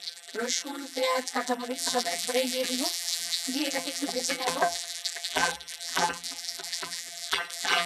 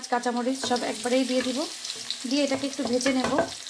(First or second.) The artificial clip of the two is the first